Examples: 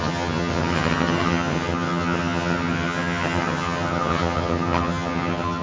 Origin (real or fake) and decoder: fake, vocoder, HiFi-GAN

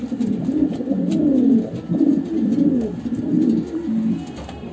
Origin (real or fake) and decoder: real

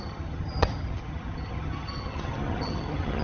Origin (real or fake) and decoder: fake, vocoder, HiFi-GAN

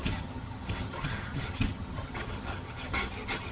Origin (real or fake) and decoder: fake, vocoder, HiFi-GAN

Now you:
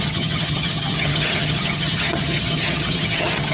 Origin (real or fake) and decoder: fake, vocoder, HiFi-GAN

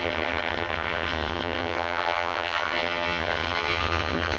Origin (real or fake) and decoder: fake, vocoder, HiFi-GAN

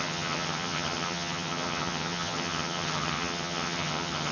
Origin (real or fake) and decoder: fake, vocoder, HiFi-GAN